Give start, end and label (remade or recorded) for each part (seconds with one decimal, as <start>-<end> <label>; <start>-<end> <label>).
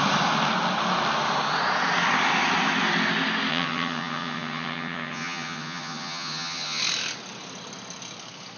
0.0-3.5 recorded; 3.5-6.8 remade; 6.8-8.6 recorded